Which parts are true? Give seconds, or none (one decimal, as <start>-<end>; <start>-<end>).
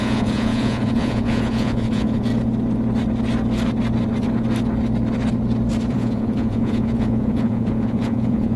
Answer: 2.3-5.9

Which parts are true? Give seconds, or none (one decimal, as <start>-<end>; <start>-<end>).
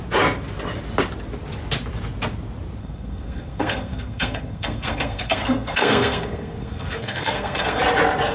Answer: 0.0-2.8; 7.8-8.3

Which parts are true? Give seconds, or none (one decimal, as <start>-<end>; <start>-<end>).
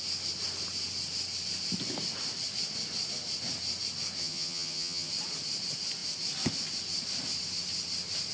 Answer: 0.0-4.2; 5.1-8.3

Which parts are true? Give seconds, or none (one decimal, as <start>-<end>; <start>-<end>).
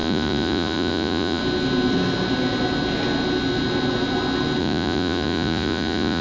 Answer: 1.4-4.6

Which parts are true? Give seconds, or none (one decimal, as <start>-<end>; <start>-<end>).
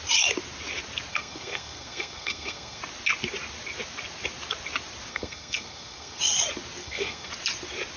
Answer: 0.0-1.1; 2.8-5.1; 6.2-6.8; 7.3-8.0